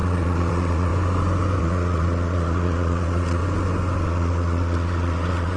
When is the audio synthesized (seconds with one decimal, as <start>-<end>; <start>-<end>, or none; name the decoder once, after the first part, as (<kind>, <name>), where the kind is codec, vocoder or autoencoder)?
0.0-0.9 (vocoder, Vocos); 1.6-3.4; 4.0-5.6

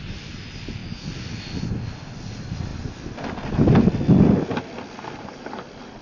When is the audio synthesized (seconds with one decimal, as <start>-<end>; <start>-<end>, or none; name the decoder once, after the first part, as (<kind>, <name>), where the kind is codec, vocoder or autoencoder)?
none

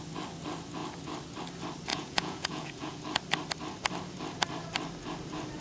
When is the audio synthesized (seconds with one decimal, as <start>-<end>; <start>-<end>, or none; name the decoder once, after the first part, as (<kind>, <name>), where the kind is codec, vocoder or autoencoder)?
1.9-3.0 (vocoder, Vocos)

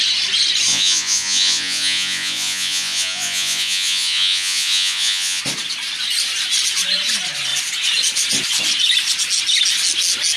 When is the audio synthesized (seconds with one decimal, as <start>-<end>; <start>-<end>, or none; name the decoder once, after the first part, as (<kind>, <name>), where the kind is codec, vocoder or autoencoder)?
0.7-5.4 (vocoder, Vocos)

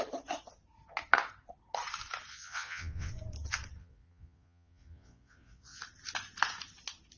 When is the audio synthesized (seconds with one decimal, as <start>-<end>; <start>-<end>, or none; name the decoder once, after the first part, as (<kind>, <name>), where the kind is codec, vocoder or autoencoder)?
2.3-3.1 (vocoder, Vocos); 3.8-5.8

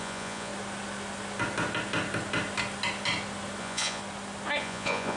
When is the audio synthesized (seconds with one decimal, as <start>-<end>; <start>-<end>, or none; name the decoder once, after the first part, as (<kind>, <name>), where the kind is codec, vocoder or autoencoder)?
0.0-0.5 (vocoder, Vocos); 3.6-4.0; 4.6-5.2

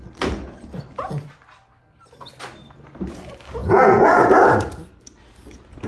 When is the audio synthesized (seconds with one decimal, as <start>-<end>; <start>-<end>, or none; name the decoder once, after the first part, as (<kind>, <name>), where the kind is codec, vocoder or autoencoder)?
3.6-4.2 (vocoder, Vocos)